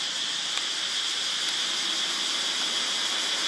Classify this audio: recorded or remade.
recorded